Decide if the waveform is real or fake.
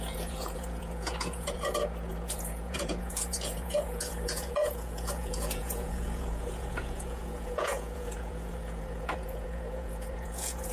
fake